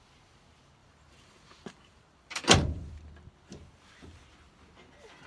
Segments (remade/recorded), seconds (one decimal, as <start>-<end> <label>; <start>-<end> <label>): 0.0-0.8 recorded; 0.8-2.9 remade; 2.9-5.3 recorded